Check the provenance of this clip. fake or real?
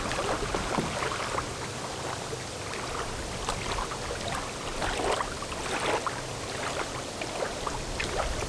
real